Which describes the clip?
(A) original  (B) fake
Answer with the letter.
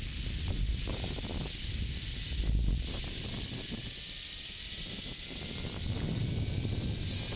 A